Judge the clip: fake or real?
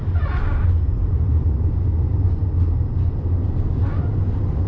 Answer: real